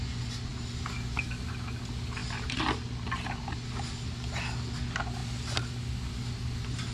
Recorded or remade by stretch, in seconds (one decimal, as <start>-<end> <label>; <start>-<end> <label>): 0.0-6.9 recorded